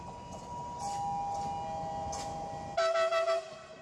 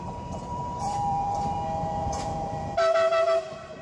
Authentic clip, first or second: first